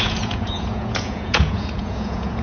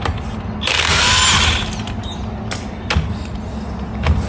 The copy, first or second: first